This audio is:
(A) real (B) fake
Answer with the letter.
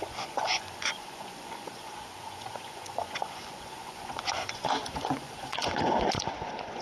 B